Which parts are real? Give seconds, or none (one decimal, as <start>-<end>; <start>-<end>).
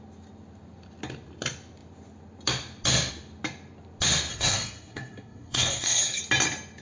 0.0-4.3; 6.2-6.8